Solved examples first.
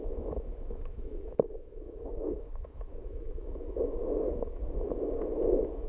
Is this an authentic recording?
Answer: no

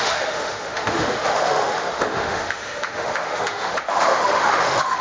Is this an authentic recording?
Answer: no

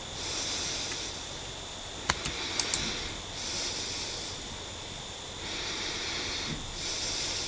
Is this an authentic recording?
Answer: yes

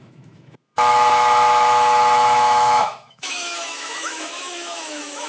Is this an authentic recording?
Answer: no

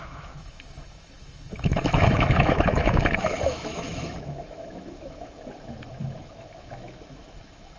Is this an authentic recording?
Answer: no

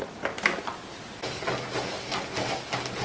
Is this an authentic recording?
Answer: yes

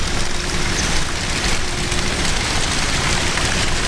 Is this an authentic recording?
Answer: yes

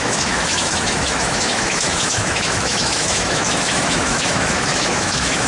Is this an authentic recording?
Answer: no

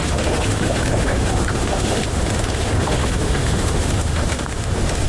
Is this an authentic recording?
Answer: no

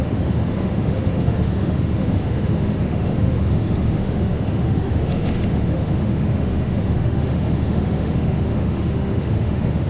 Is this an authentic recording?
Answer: no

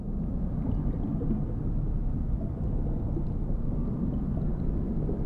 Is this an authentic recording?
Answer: yes